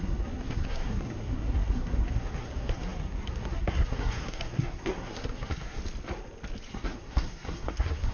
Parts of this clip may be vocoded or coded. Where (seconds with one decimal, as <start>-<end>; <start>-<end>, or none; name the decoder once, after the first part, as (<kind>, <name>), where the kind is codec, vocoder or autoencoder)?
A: 0.0-5.8 (codec, SNAC); 6.7-8.1